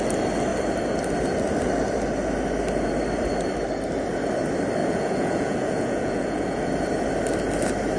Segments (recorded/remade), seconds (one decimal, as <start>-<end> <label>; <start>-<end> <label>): 0.0-4.8 recorded; 4.8-6.7 remade; 6.7-8.0 recorded